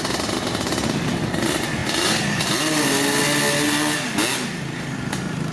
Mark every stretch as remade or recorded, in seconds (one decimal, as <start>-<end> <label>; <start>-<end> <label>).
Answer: 0.0-5.5 recorded